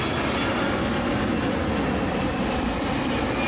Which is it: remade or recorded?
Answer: recorded